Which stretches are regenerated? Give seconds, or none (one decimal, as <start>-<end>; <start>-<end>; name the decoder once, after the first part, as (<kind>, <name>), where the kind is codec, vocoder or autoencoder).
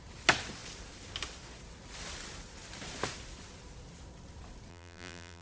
4.7-5.4 (vocoder, BigVGAN v2)